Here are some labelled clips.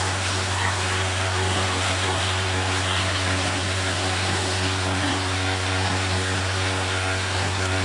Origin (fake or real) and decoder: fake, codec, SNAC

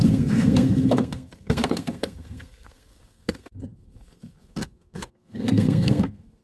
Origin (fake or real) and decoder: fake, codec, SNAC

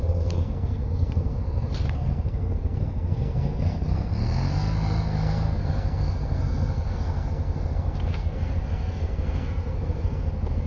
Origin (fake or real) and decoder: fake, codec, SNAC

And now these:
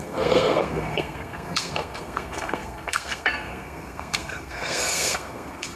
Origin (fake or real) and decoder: fake, codec, SNAC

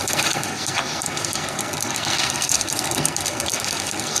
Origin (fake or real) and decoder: fake, codec, SNAC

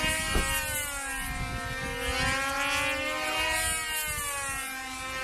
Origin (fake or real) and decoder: real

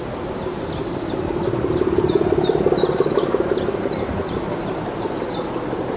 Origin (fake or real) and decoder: real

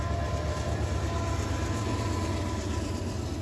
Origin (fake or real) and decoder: real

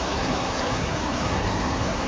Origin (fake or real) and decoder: fake, codec, SNAC